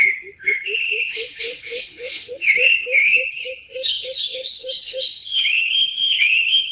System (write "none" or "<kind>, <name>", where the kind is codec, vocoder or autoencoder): codec, HILCodec